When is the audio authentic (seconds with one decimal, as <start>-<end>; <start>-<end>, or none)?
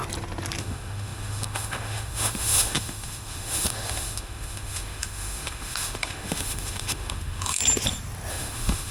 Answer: 0.0-0.6; 7.6-8.3